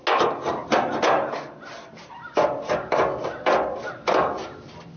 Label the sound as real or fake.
real